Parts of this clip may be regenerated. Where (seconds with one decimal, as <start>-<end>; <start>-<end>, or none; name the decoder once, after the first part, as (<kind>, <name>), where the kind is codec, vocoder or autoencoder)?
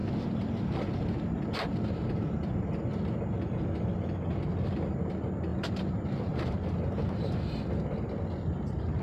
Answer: 0.0-2.7 (vocoder, BigVGAN v2); 5.5-7.6